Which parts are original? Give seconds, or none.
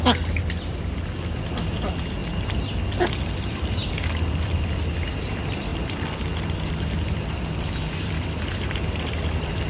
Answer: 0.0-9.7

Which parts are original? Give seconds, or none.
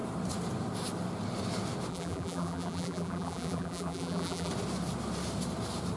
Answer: 0.0-1.9; 4.5-6.0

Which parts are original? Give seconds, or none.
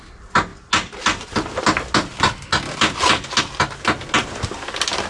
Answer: 0.0-5.1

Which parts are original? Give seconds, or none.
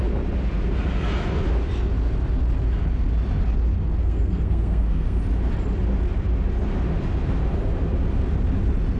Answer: 0.0-4.0; 5.2-9.0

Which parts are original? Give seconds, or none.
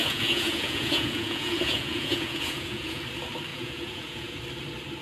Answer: 3.0-3.5; 4.4-5.0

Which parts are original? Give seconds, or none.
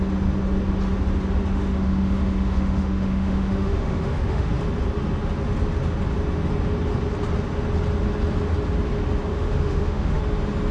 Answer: 0.0-1.5; 4.5-9.3; 10.2-10.7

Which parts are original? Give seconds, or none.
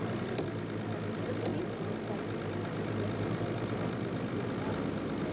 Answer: 0.0-5.3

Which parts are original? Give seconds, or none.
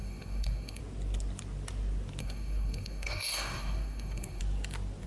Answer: 0.8-2.2; 4.4-5.1